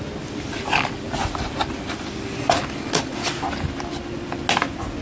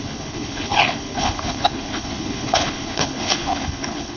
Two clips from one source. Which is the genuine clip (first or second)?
first